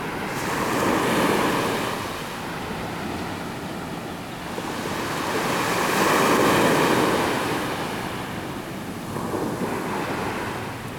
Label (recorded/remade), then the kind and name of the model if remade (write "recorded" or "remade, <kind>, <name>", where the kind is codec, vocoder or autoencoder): recorded